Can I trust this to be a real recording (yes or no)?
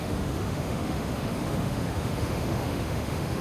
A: no